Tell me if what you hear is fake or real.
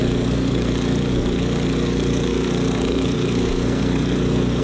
fake